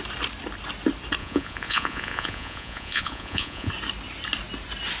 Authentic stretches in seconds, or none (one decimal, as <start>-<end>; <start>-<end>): 0.0-1.2; 3.7-5.0